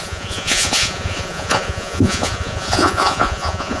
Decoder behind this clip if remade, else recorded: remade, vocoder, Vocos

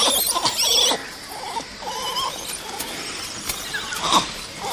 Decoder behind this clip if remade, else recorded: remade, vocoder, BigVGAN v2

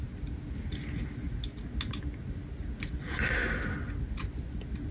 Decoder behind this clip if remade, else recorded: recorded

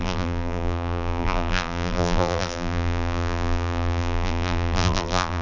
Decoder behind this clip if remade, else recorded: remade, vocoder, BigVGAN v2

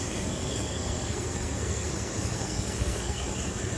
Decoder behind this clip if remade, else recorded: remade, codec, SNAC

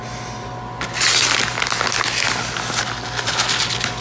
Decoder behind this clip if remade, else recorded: recorded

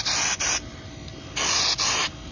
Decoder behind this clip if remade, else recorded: recorded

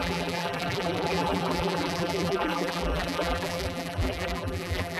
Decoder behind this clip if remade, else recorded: remade, vocoder, BigVGAN v2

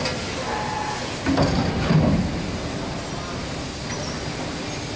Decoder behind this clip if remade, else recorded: recorded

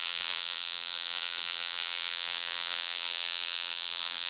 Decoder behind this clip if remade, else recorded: remade, vocoder, BigVGAN v2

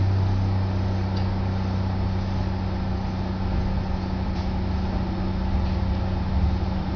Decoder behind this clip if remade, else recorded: recorded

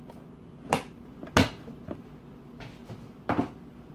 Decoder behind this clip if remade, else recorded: recorded